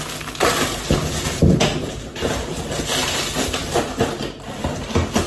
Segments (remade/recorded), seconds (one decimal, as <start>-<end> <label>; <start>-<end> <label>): 0.0-5.3 recorded